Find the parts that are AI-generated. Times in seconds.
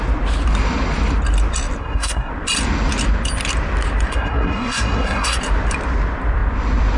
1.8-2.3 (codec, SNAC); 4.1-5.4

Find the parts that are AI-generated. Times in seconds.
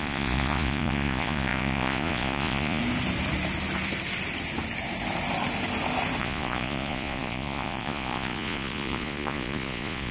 0.0-2.8 (vocoder, Vocos); 6.2-10.1